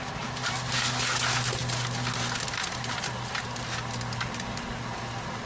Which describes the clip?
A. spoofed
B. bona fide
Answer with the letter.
B